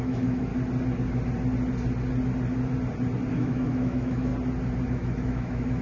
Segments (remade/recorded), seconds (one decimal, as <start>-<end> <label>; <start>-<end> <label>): 0.0-0.5 remade; 0.5-3.3 recorded; 3.3-4.3 remade; 4.3-4.9 recorded; 4.9-5.8 remade